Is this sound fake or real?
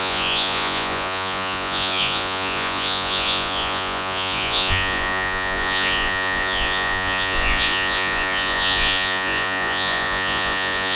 fake